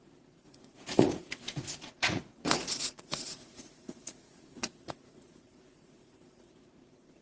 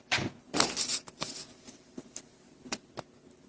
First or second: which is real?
second